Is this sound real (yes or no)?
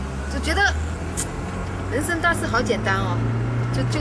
yes